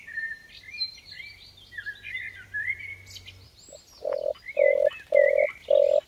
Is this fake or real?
fake